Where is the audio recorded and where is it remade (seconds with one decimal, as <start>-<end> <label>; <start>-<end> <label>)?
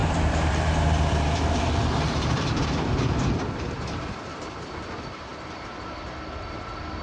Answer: 0.0-5.3 remade; 5.3-7.0 recorded